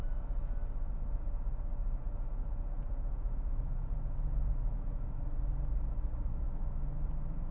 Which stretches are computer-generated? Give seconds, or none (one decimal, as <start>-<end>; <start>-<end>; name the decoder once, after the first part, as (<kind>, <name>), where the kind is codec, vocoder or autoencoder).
1.8-5.1 (vocoder, Vocos)